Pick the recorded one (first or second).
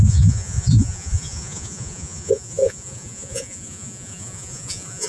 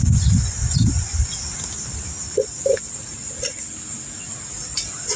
second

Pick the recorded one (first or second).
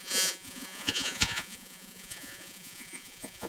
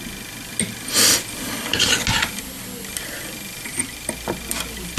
second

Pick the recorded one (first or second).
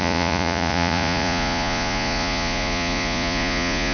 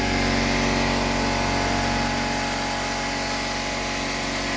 second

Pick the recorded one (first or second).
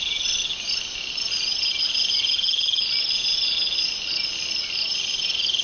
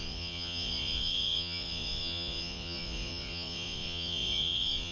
first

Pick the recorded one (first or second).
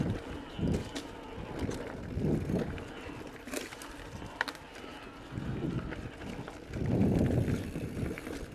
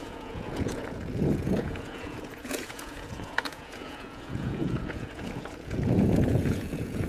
first